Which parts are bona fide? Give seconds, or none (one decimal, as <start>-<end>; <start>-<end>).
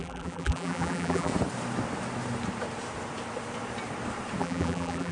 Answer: 1.3-4.4